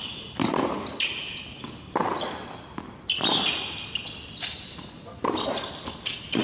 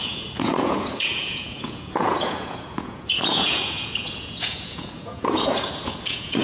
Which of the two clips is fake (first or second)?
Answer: second